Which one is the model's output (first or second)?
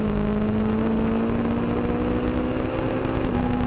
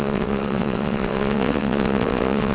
second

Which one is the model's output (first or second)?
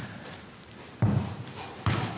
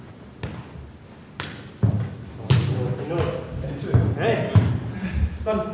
first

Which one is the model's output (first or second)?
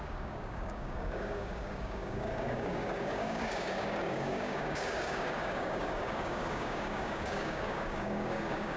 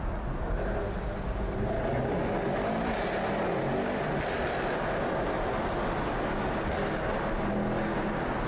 first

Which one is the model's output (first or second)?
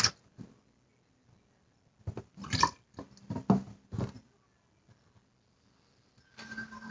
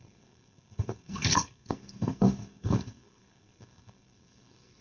second